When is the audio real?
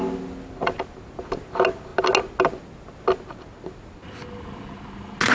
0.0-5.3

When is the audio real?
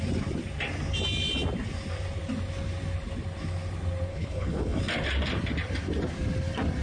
0.0-4.1; 4.8-6.8